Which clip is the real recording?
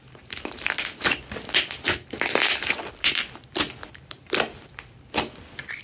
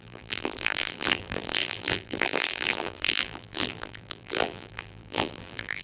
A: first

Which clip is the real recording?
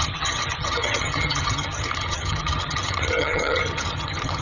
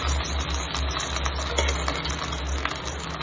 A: second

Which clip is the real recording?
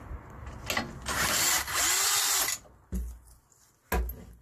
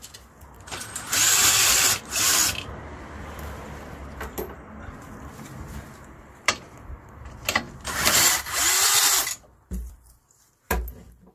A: first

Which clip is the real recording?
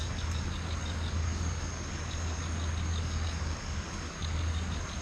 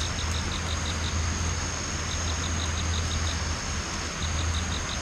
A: second